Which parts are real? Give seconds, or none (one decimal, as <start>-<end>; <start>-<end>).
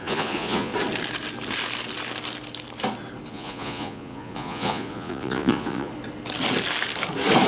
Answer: 0.7-3.3; 5.9-7.5